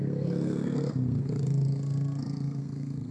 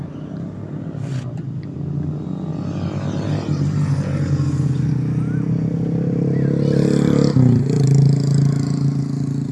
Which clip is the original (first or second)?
second